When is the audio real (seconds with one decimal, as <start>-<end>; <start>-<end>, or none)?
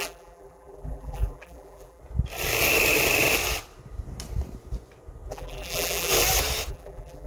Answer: 2.0-5.3; 6.1-6.7